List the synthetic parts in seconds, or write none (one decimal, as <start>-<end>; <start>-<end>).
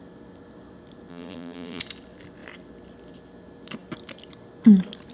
1.1-1.8